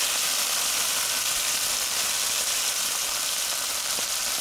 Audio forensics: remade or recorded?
remade